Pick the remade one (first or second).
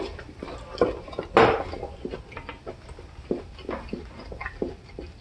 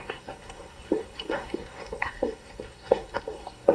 second